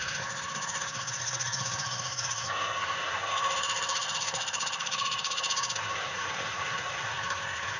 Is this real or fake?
fake